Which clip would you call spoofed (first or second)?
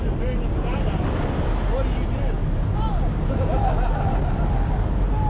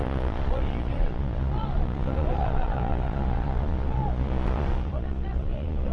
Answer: second